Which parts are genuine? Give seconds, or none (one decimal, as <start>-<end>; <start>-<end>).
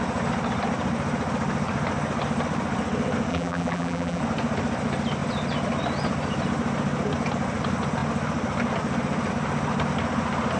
0.0-3.3; 4.2-10.6